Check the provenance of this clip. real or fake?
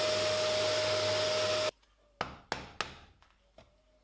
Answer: real